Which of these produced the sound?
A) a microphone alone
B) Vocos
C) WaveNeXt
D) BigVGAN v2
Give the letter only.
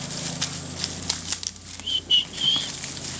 A